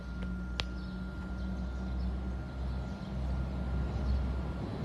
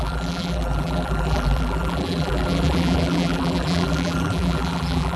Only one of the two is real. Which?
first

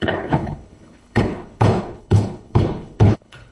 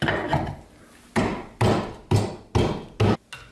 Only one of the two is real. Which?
second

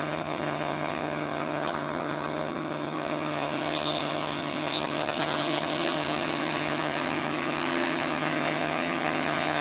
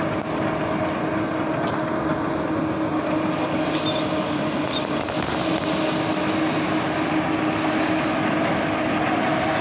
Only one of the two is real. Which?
second